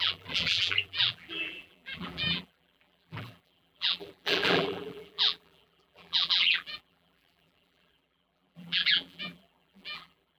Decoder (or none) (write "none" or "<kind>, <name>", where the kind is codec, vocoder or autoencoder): vocoder, BigVGAN v2